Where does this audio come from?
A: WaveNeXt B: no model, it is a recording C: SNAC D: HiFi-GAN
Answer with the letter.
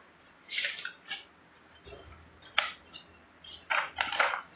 B